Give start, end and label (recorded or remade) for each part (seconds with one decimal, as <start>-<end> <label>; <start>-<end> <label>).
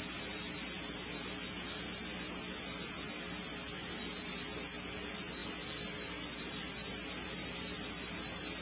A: 0.0-8.6 recorded